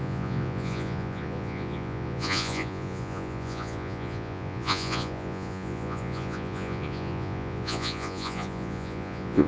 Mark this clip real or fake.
fake